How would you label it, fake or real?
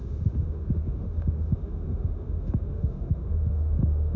fake